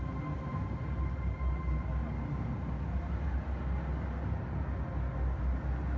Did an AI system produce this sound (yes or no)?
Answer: no